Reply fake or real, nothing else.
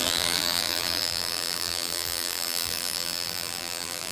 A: fake